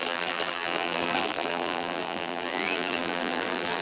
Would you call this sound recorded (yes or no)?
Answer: no